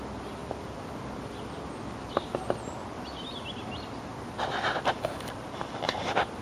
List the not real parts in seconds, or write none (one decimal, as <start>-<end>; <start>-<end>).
none